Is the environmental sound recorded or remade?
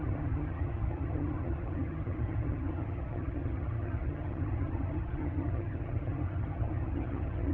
remade